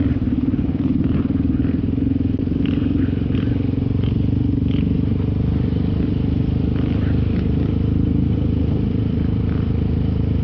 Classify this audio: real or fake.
real